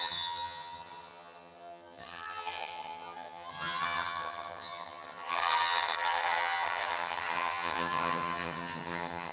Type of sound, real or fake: fake